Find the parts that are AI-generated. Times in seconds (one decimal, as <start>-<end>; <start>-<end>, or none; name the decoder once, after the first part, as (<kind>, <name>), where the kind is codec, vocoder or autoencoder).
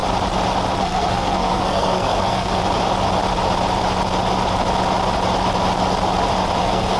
0.8-2.6 (codec, SNAC); 6.6-7.0